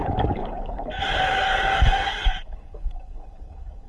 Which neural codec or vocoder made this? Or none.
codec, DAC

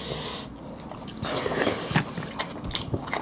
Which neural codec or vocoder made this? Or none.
none